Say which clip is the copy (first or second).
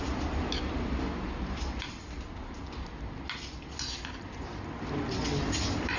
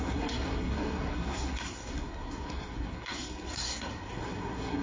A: second